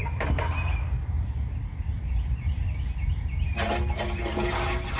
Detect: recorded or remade recorded